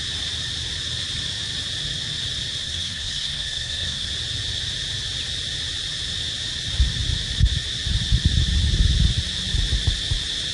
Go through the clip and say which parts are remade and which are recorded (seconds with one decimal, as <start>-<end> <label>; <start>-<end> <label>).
0.0-2.6 recorded; 2.6-4.1 remade; 4.1-10.5 recorded